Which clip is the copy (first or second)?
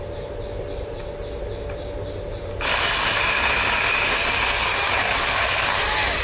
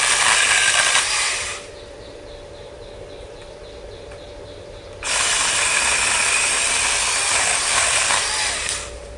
second